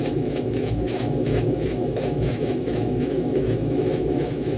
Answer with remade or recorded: remade